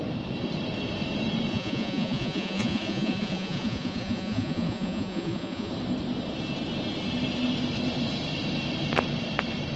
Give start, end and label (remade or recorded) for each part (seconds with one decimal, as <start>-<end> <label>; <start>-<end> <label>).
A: 0.0-1.5 recorded; 1.5-5.7 remade; 5.7-9.8 recorded